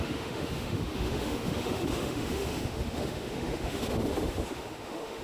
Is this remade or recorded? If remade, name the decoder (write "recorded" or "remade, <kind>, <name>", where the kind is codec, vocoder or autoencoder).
remade, autoencoder, DAC-VAE